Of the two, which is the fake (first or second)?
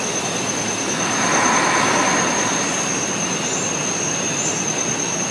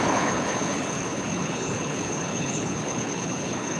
second